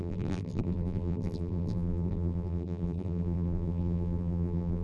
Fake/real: fake